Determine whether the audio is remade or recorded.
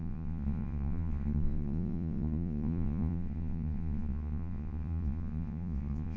remade